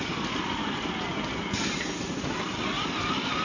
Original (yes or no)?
yes